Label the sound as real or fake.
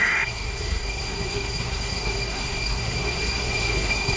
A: fake